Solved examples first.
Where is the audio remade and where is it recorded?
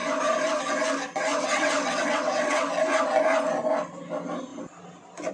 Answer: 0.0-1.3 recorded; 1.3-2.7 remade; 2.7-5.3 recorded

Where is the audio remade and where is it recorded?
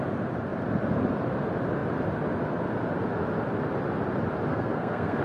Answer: 0.0-4.5 recorded; 4.5-5.2 remade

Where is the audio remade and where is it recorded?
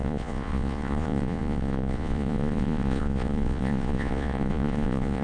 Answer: 0.0-5.2 remade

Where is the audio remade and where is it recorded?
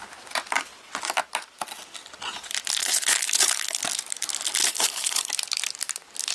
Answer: 0.0-2.8 recorded; 2.8-3.8 remade; 3.8-4.6 recorded; 4.6-5.3 remade; 5.3-6.3 recorded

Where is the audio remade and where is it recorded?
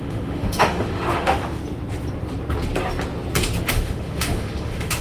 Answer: 0.0-1.6 remade; 1.6-3.6 recorded; 3.6-5.0 remade